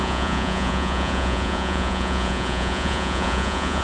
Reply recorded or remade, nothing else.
remade